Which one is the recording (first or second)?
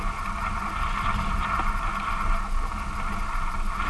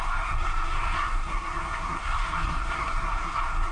first